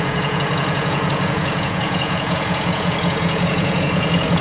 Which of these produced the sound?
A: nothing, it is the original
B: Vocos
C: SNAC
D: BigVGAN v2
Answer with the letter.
B